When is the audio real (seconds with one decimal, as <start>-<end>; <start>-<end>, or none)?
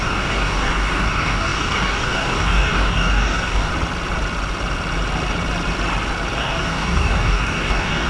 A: 3.7-6.4